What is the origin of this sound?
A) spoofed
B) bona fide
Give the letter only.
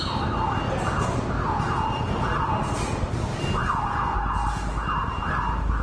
B